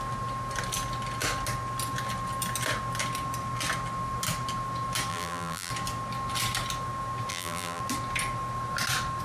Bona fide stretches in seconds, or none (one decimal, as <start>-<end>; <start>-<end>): 0.0-5.1; 5.7-7.3; 7.8-9.2